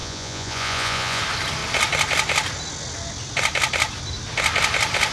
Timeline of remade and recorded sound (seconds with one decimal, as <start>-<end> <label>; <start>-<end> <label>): 0.0-1.2 remade; 1.2-5.1 recorded